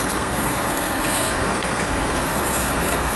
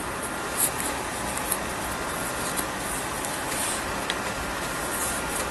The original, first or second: second